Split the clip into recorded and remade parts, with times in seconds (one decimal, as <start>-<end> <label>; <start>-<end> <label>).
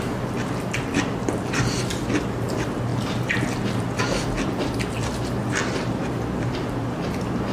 0.0-7.5 recorded